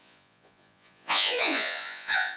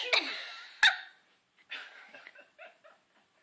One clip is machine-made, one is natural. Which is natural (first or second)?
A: second